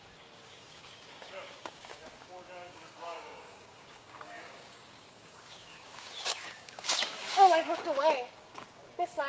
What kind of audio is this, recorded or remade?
remade